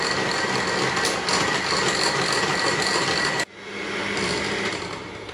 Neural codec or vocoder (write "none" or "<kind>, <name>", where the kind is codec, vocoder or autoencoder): none